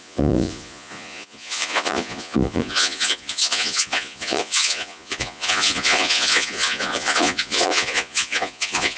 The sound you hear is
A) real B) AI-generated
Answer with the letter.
B